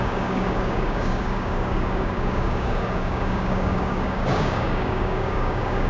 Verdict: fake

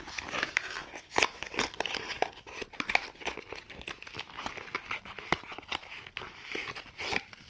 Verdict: real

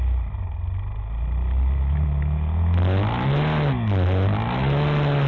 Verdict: real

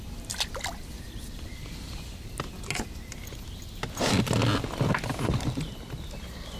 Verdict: real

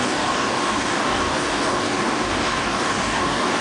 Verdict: fake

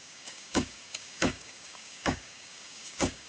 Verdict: fake